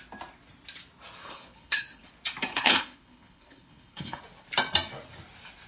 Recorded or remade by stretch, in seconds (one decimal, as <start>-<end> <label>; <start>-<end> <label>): 0.0-1.2 recorded; 1.2-2.1 remade; 2.1-2.5 recorded; 2.5-4.2 remade; 4.2-5.7 recorded